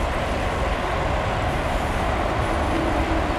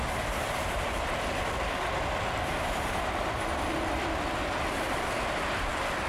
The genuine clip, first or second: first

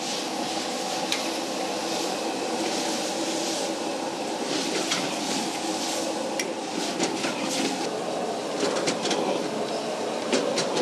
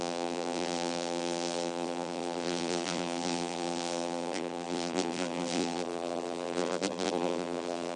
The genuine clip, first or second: first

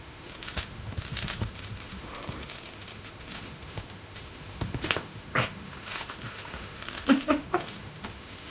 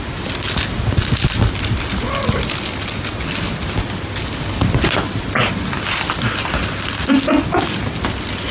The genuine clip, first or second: second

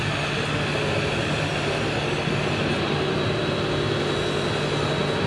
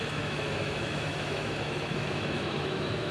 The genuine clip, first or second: first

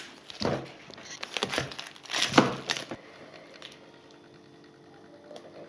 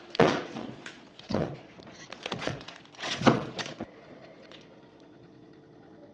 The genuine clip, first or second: first